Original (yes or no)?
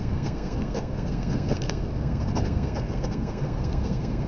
no